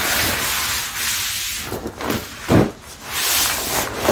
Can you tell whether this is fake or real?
real